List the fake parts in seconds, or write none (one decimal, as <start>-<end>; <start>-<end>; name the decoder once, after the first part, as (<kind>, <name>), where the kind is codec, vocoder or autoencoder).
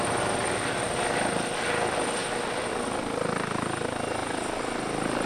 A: none